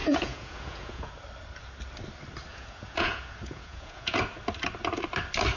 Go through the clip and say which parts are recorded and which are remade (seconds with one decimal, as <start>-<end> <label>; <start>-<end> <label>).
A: 0.0-1.1 remade; 1.1-2.5 recorded; 2.5-4.2 remade; 4.2-5.6 recorded